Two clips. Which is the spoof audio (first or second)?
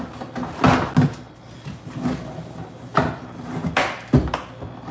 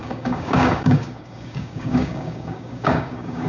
second